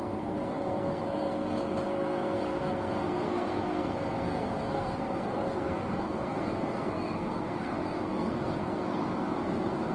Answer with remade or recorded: remade